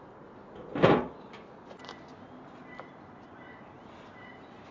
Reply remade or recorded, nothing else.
recorded